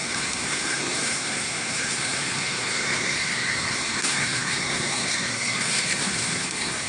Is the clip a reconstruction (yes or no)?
yes